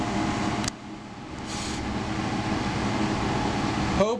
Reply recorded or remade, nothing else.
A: recorded